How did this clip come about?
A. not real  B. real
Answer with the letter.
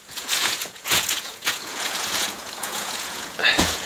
A